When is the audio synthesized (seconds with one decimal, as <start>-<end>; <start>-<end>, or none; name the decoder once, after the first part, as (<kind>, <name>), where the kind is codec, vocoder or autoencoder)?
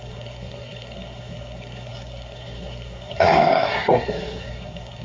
0.0-5.0 (codec, SNAC)